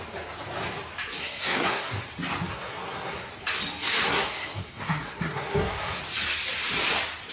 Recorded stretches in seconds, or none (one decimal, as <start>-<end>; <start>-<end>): 0.0-1.2; 1.9-2.5; 3.3-4.0; 6.0-7.3